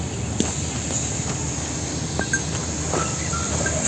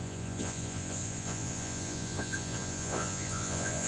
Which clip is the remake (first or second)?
second